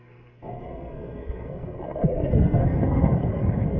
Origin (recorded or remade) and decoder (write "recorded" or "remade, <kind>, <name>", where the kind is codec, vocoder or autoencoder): remade, codec, SNAC